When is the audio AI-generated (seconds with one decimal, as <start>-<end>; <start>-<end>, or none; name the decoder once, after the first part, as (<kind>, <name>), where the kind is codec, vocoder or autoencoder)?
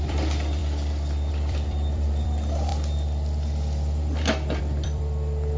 0.0-0.6 (vocoder, BigVGAN v2); 1.3-2.7; 4.6-5.6